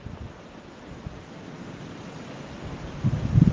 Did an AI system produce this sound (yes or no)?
no